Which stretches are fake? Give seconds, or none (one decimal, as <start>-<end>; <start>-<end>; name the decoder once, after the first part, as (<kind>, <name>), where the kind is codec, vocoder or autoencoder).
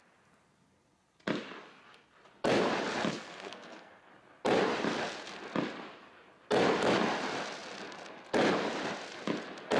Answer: 3.1-4.1 (codec, SNAC)